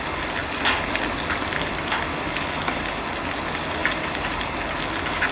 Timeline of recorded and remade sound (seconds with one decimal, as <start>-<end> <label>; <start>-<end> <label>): 0.0-3.8 recorded; 3.8-4.4 remade; 4.4-5.3 recorded